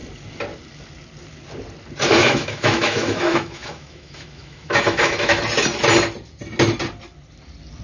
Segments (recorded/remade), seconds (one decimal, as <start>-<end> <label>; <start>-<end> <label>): 0.0-2.2 recorded; 2.2-5.4 remade; 5.4-7.8 recorded